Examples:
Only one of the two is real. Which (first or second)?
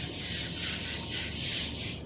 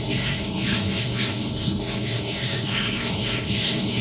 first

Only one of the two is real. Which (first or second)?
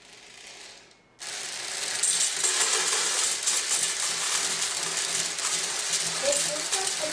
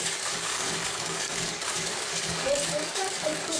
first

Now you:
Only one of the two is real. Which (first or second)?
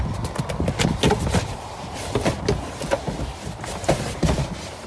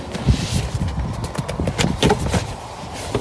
first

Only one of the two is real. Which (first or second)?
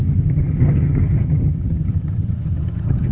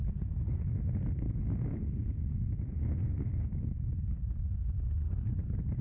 second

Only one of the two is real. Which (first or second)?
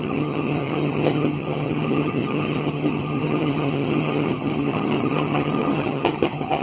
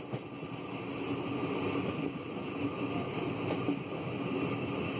second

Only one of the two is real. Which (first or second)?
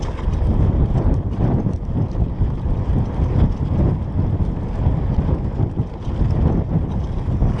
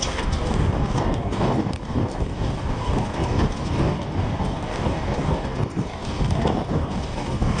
first